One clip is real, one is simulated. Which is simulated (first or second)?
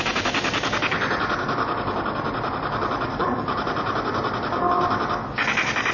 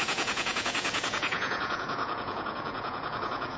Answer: second